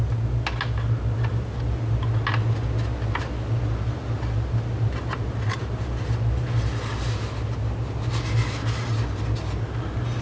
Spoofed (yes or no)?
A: no